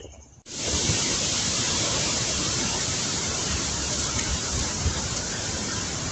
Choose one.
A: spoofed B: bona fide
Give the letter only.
A